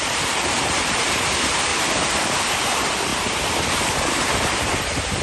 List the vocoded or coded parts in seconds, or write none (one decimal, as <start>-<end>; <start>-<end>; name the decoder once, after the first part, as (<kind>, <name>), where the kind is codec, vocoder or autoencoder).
0.0-1.7 (vocoder, BigVGAN v2); 2.5-3.1; 4.0-5.2

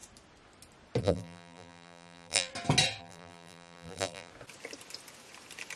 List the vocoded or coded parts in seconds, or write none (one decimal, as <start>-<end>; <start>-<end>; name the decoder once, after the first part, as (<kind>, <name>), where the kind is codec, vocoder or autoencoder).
1.0-2.5 (vocoder, BigVGAN v2); 3.0-4.3

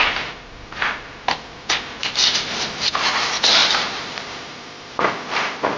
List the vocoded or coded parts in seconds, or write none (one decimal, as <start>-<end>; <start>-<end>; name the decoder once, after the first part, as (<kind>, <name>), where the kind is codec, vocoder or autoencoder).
2.0-2.7 (vocoder, BigVGAN v2); 3.6-5.0

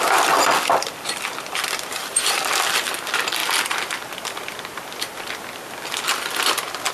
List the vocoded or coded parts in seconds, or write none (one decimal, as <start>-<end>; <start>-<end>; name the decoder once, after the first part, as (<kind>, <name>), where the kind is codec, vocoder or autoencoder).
0.0-3.4 (vocoder, BigVGAN v2)

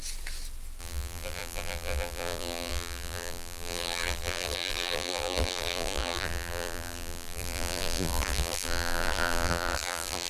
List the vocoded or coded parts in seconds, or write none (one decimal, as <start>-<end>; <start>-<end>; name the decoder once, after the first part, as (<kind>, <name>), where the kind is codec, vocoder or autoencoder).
0.8-10.3 (vocoder, BigVGAN v2)

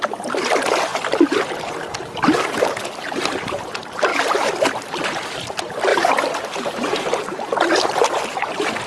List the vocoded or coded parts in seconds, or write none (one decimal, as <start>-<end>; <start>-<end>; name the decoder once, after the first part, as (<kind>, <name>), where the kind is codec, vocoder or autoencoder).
5.9-7.5 (vocoder, BigVGAN v2)